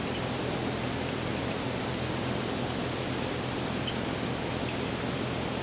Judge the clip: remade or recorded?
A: recorded